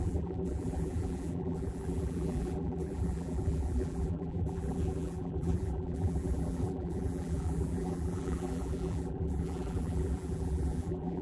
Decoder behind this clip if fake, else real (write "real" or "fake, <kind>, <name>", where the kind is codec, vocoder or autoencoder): fake, vocoder, BigVGAN v2